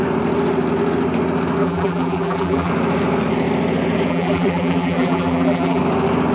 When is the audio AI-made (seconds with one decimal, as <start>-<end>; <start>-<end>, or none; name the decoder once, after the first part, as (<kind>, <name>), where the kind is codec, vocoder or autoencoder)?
1.6-2.7 (vocoder, BigVGAN v2); 4.1-5.8